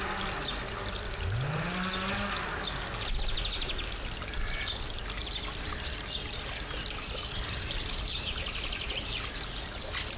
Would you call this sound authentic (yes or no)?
yes